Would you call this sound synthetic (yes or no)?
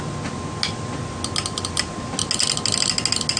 no